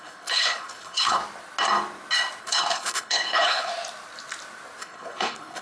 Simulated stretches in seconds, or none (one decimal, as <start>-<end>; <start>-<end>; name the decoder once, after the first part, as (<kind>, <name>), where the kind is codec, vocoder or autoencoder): 0.0-1.2 (codec, HILCodec); 2.4-3.7; 4.8-5.6